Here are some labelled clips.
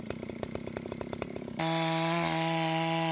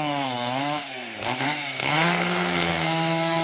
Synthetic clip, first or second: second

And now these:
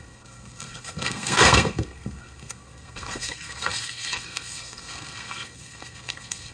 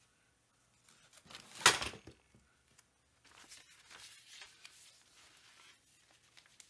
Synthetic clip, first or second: first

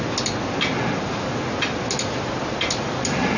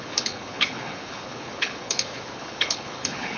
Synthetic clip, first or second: second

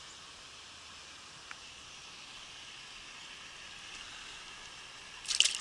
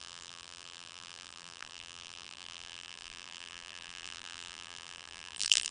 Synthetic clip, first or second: second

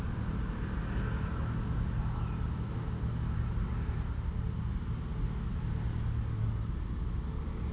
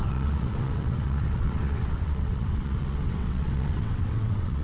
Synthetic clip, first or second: second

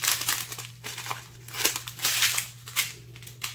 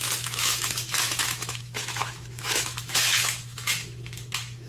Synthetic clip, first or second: second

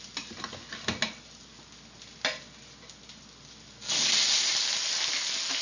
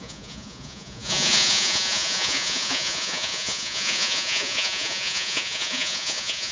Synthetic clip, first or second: second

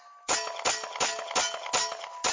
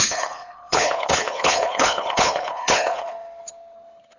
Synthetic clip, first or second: second